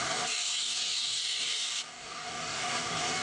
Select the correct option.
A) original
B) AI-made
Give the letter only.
B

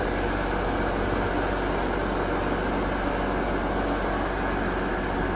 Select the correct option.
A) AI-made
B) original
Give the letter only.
B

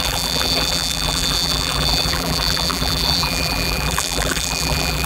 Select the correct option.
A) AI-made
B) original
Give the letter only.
A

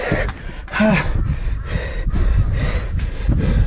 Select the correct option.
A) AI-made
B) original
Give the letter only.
B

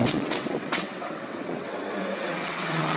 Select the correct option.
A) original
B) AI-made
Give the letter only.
B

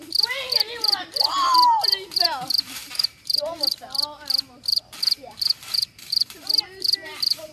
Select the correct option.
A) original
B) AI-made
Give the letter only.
B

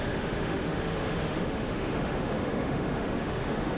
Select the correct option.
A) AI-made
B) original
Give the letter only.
A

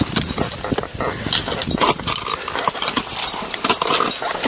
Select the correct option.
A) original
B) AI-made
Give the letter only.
A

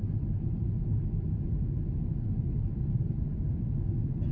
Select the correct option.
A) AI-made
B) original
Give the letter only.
B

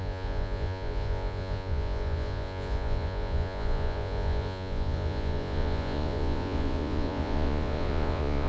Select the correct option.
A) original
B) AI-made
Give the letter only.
B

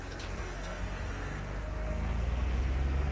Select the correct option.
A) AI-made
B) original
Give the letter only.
A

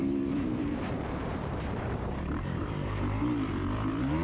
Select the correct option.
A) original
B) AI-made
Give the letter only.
B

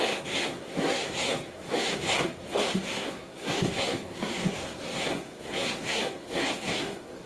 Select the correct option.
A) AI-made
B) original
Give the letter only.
A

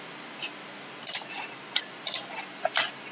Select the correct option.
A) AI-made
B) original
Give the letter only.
B